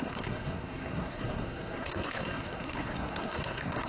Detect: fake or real fake